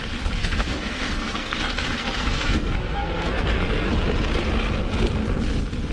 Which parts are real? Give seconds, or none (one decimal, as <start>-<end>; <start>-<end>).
0.0-0.4; 3.9-5.9

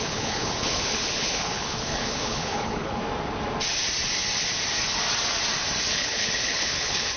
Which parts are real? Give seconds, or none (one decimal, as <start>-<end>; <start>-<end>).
3.0-5.9

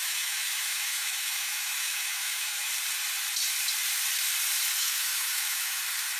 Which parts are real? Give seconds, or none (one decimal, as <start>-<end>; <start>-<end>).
2.7-4.8; 5.8-6.2

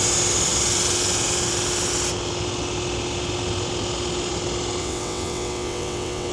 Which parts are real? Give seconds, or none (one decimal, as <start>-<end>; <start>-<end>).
0.0-4.8

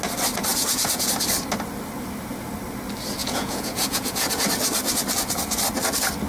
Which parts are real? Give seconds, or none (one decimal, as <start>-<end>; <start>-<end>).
0.0-0.5; 1.1-3.2; 4.3-6.3

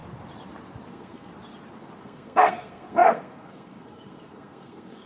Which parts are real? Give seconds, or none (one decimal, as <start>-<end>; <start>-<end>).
0.0-0.9; 1.3-2.0